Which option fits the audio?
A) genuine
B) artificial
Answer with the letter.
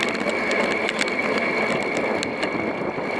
A